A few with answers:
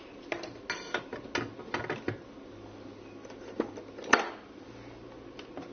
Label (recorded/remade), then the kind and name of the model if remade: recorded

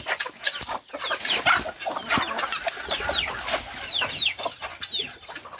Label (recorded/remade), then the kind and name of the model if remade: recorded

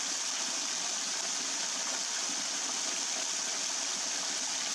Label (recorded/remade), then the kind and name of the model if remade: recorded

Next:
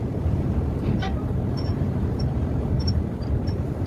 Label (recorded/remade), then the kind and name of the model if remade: remade, vocoder, BigVGAN v2